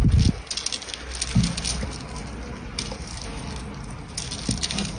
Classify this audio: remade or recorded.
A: recorded